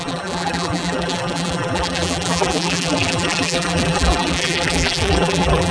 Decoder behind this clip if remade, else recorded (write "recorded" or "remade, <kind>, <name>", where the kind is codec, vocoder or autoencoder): remade, vocoder, BigVGAN v2